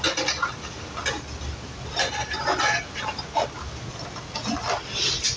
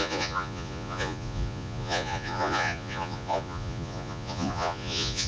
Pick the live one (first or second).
first